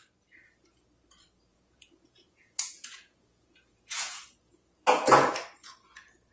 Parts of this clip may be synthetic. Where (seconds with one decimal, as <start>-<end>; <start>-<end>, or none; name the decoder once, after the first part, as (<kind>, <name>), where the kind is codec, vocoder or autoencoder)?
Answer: 1.5-5.3 (vocoder, Vocos)